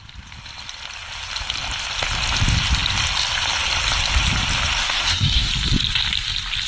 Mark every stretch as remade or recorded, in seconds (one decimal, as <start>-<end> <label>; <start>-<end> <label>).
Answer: 0.0-4.8 recorded; 4.8-5.5 remade; 5.5-6.7 recorded